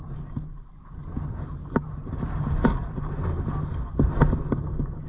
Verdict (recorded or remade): recorded